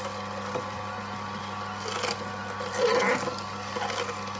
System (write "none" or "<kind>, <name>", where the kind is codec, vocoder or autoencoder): none